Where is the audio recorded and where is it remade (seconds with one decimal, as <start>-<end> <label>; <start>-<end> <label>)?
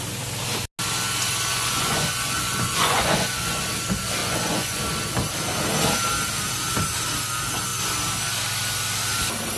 0.0-1.5 recorded; 1.5-3.6 remade; 3.6-4.2 recorded; 4.2-4.8 remade; 4.8-9.6 recorded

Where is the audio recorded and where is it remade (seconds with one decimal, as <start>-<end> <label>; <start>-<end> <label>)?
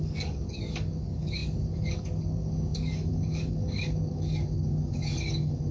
0.0-5.7 remade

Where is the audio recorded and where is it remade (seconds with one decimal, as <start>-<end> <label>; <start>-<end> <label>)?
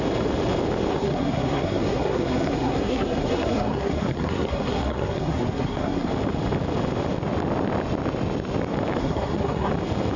0.0-0.9 recorded; 0.9-6.1 remade; 6.1-9.0 recorded; 9.0-9.7 remade; 9.7-10.2 recorded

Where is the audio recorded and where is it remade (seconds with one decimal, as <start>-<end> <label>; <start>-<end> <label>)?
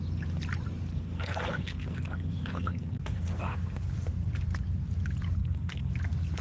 0.0-0.9 recorded; 0.9-3.8 remade; 3.8-5.4 recorded; 5.4-5.9 remade; 5.9-6.4 recorded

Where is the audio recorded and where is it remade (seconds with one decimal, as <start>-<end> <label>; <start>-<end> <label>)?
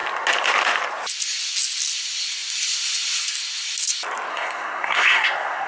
0.0-4.3 recorded; 4.3-5.7 remade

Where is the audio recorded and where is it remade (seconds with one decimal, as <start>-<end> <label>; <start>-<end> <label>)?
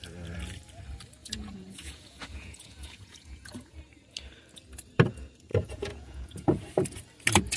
0.0-1.2 recorded; 1.2-3.8 remade; 3.8-5.5 recorded; 5.5-6.6 remade; 6.6-7.6 recorded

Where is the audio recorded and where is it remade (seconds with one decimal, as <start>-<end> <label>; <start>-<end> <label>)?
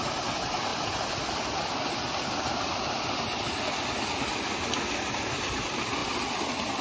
0.0-6.8 recorded